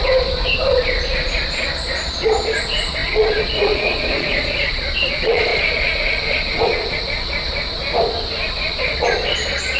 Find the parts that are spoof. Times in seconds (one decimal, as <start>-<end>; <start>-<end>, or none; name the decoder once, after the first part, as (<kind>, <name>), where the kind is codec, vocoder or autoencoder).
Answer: 0.0-7.8 (vocoder, Vocos); 8.5-9.8